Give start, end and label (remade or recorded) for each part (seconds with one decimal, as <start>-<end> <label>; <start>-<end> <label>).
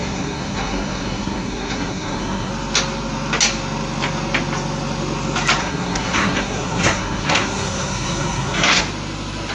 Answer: 0.0-2.5 remade; 2.5-5.6 recorded; 5.6-8.8 remade; 8.8-9.5 recorded